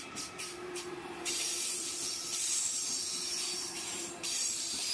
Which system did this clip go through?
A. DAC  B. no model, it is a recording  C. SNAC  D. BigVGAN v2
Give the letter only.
D